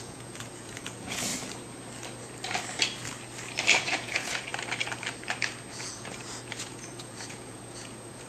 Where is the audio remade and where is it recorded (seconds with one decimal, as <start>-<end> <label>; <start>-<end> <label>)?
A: 0.0-1.3 remade; 1.3-3.8 recorded; 3.8-4.5 remade; 4.5-5.7 recorded; 5.7-8.3 remade